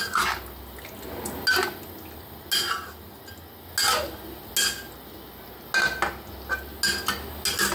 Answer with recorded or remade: recorded